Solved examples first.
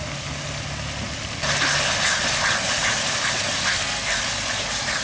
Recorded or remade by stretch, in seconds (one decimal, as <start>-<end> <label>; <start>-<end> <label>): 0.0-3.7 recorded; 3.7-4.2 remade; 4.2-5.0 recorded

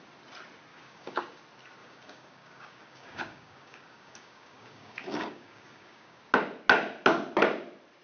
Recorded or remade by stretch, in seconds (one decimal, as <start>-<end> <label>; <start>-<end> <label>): 0.0-0.7 recorded; 0.7-1.4 remade; 1.4-1.8 recorded; 1.8-6.2 remade; 6.2-8.0 recorded

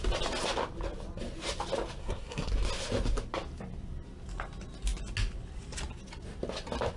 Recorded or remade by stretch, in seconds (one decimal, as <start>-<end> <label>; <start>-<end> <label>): 0.0-2.0 recorded; 2.0-2.5 remade; 2.5-7.0 recorded

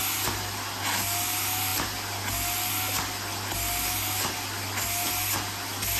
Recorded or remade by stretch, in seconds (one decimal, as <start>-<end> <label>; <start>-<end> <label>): 0.0-6.0 recorded

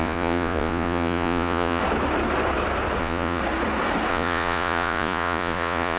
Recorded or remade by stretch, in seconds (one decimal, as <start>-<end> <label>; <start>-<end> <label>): 0.0-1.8 remade; 1.8-3.0 recorded; 3.0-3.4 remade; 3.4-4.1 recorded; 4.1-6.0 remade

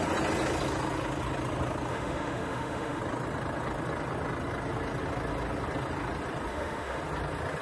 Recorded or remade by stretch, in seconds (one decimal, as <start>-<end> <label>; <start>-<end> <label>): 0.0-1.9 recorded; 1.9-3.0 remade; 3.0-6.5 recorded; 6.5-7.0 remade; 7.0-7.6 recorded